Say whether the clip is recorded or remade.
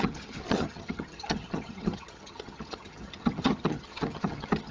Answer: remade